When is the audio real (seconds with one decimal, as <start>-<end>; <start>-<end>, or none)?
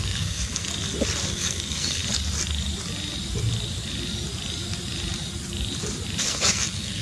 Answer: 0.7-1.3; 2.0-6.2